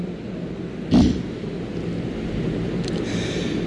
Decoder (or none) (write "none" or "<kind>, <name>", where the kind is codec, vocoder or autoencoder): none